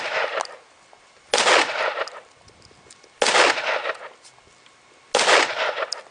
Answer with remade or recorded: recorded